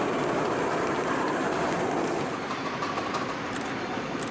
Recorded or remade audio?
remade